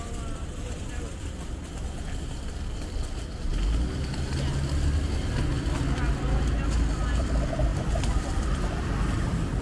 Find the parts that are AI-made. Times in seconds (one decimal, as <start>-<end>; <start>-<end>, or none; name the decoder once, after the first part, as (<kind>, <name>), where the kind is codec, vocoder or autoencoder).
0.0-3.5 (vocoder, BigVGAN v2); 7.1-9.6